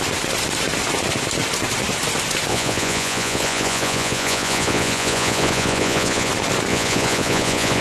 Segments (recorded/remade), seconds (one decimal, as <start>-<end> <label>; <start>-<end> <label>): 0.0-2.5 recorded; 2.5-6.3 remade; 6.3-6.7 recorded; 6.7-7.8 remade